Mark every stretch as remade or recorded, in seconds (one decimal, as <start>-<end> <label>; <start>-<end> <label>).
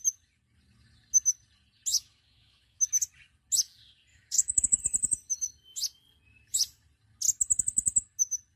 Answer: 0.0-1.9 recorded; 1.9-2.8 remade; 2.8-4.1 recorded; 4.1-4.8 remade; 4.8-8.6 recorded